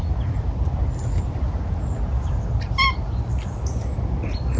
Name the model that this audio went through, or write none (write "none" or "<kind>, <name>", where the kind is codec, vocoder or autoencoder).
none